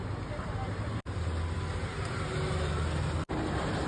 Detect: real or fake real